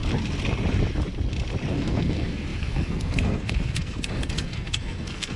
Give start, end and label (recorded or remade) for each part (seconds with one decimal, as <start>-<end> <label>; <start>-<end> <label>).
0.0-1.7 recorded; 1.7-5.4 remade

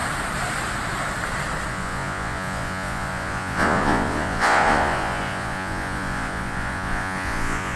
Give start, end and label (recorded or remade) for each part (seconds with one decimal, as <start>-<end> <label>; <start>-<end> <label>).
0.0-1.7 recorded; 1.7-7.8 remade

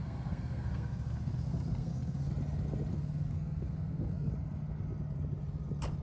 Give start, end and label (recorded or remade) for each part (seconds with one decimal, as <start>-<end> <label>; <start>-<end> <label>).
0.0-2.3 remade; 2.3-2.9 recorded; 2.9-4.3 remade; 4.3-6.0 recorded

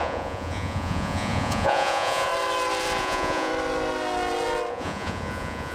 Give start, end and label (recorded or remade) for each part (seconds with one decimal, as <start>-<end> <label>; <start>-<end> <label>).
0.0-2.3 remade; 2.3-3.0 recorded; 3.0-3.5 remade; 3.5-4.7 recorded; 4.7-5.7 remade

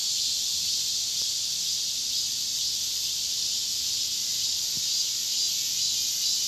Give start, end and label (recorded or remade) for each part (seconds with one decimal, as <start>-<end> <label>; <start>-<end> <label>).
0.0-5.0 remade; 5.0-6.5 recorded

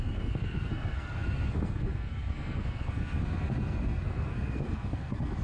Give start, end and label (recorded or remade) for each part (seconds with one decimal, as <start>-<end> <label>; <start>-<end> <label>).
0.0-5.4 remade

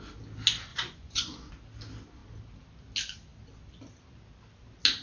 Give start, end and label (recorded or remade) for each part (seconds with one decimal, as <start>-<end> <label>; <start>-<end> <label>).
0.0-0.7 recorded; 0.7-1.5 remade; 1.5-5.0 recorded

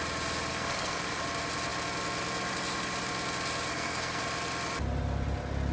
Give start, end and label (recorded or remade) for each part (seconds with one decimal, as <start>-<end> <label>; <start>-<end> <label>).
0.0-0.5 recorded; 0.5-1.2 remade; 1.2-3.7 recorded; 3.7-4.2 remade; 4.2-5.7 recorded